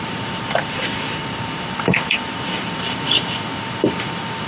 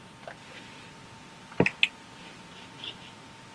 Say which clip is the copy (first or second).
first